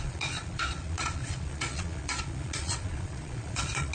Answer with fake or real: fake